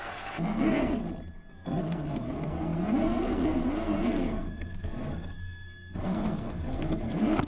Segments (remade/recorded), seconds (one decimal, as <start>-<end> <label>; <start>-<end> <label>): 0.0-1.0 remade; 1.0-1.5 recorded; 1.5-7.5 remade